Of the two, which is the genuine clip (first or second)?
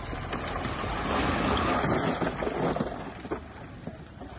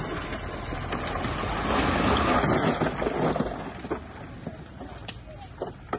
second